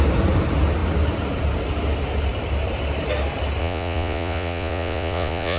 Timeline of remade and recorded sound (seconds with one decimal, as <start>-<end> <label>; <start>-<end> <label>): 0.0-3.6 recorded; 3.6-5.6 remade